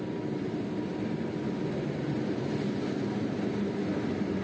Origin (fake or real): real